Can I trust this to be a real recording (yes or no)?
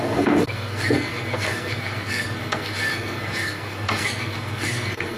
no